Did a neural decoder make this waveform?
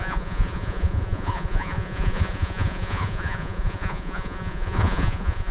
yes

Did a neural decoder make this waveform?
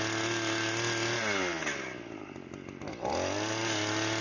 no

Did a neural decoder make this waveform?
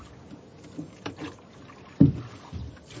no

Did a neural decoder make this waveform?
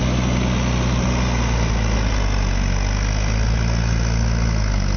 no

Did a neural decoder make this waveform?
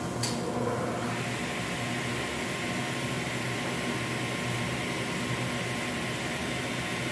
no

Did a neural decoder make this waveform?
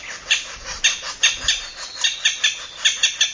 no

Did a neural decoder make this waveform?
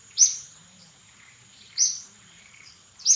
yes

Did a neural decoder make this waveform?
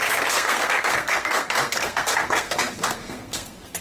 yes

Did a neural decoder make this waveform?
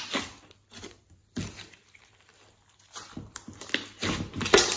no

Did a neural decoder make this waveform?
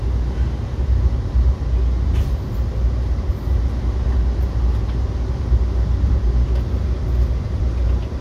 no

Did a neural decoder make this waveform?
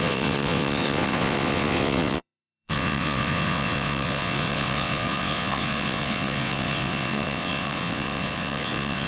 yes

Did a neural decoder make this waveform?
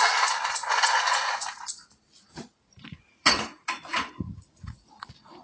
yes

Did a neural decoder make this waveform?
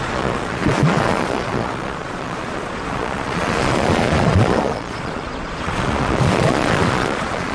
yes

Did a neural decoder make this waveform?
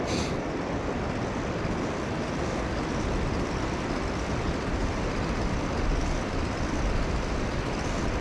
no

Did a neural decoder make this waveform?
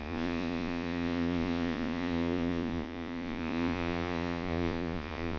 yes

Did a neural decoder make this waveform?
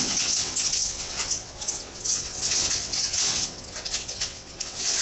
yes